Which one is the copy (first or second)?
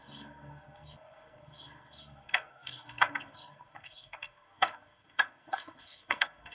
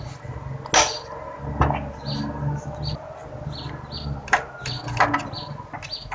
first